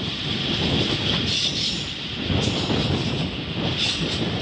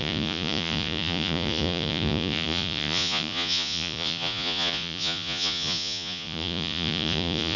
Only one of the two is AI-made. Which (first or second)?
second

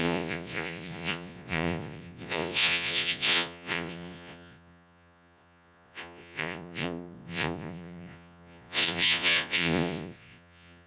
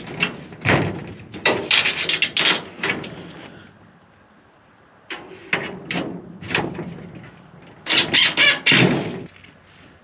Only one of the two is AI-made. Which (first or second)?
first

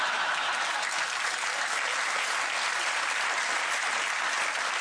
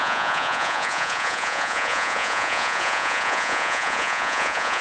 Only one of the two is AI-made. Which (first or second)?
second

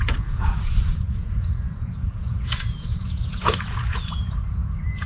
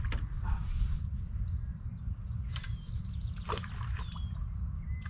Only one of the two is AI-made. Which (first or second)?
first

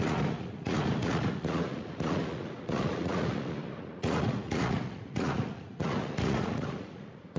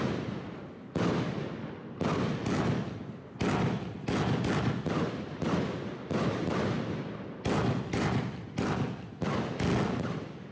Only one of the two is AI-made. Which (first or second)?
first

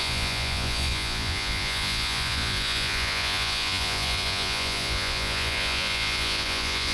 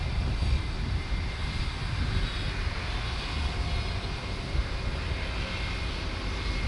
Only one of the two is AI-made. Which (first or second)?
first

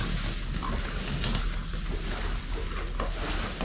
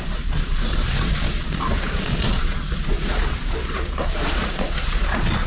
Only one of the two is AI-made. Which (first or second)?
second